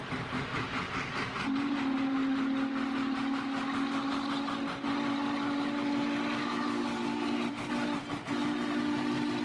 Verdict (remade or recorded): recorded